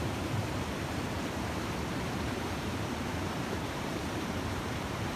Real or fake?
fake